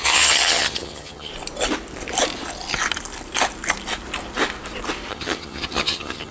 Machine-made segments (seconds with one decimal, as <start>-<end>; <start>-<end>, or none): 0.0-1.3; 5.1-6.3